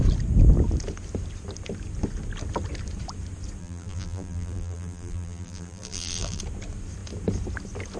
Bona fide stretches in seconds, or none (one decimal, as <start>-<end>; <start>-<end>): 0.0-3.6; 6.4-8.0